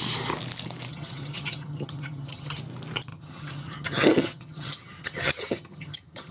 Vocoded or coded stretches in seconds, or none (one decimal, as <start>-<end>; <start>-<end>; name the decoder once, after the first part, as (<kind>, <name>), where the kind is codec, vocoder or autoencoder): 0.9-2.6 (vocoder, HiFi-GAN); 3.1-6.3